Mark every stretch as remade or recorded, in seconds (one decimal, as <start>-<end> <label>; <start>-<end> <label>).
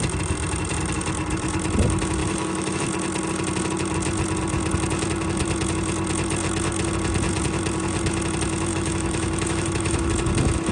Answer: 0.0-2.2 recorded; 2.2-2.8 remade; 2.8-8.7 recorded; 8.7-10.1 remade; 10.1-10.7 recorded